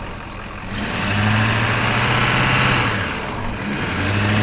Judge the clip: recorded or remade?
recorded